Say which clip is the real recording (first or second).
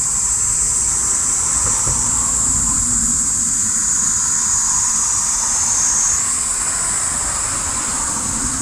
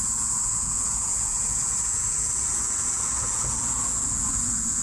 first